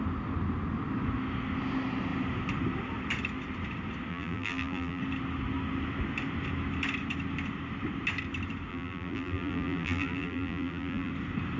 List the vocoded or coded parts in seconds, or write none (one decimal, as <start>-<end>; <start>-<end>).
4.1-5.0; 8.7-11.1

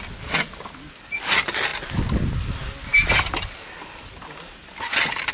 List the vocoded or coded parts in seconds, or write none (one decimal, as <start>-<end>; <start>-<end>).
none

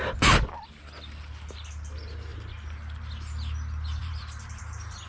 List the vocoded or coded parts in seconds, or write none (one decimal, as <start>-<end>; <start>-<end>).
4.0-4.6

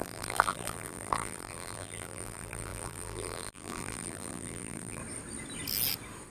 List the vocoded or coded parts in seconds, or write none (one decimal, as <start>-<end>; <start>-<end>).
0.0-5.0

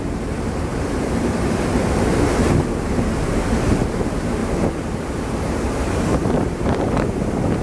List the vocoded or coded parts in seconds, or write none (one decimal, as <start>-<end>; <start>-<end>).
0.0-7.6